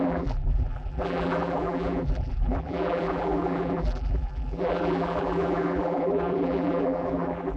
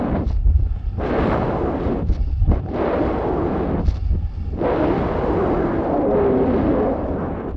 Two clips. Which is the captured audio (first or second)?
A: second